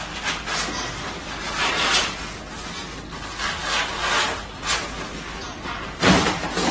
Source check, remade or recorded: recorded